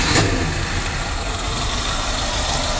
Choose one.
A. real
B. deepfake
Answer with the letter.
A